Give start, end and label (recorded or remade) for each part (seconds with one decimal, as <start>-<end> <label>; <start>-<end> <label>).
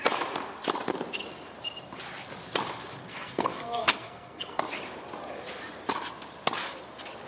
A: 0.0-3.1 recorded; 3.1-4.6 remade; 4.6-7.3 recorded